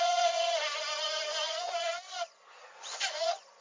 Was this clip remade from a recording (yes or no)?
yes